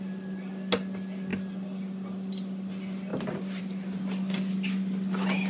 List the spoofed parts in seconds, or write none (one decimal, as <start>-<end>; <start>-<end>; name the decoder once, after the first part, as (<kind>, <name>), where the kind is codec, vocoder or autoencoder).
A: none